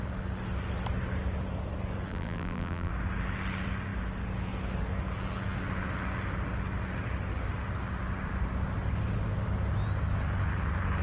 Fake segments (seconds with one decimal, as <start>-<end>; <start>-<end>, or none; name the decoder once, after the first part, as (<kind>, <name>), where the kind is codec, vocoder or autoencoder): 2.1-2.9 (vocoder, BigVGAN v2)